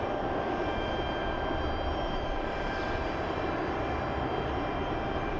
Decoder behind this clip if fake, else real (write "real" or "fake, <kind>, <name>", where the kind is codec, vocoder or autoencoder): fake, vocoder, BigVGAN v2